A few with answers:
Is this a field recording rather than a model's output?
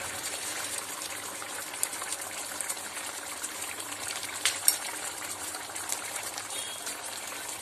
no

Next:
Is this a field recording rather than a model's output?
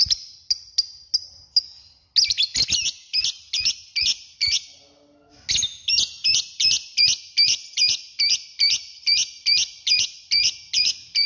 yes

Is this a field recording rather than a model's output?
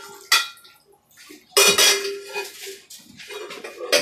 yes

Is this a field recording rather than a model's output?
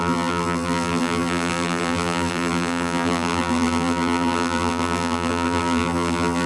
no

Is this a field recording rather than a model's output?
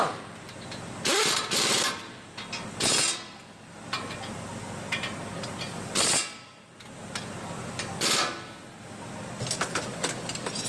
yes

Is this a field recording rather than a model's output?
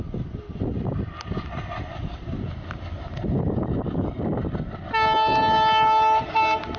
yes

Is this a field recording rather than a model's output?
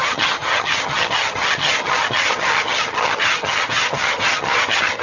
no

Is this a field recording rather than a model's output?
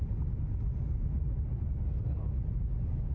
yes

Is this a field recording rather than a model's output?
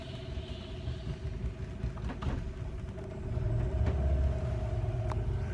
yes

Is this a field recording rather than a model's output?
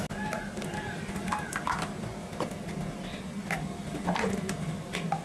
yes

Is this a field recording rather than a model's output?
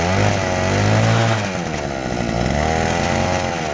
yes